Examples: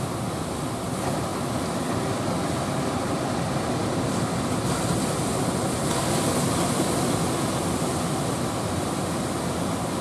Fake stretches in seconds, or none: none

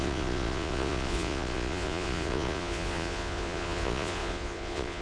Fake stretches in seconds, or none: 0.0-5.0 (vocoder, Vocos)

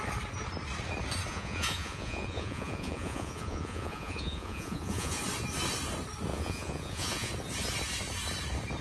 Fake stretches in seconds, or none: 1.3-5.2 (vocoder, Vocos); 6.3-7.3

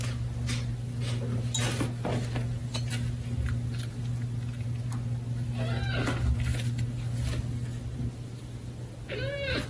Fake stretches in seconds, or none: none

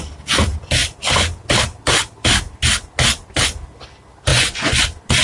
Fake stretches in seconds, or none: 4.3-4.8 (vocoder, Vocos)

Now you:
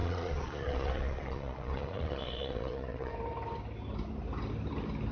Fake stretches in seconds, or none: 0.0-3.1 (vocoder, Vocos)

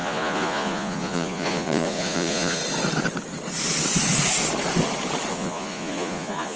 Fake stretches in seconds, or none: 0.0-2.6 (vocoder, Vocos); 5.3-6.6

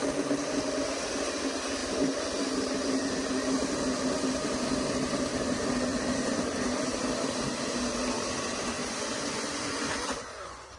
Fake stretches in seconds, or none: 8.8-10.8 (vocoder, Vocos)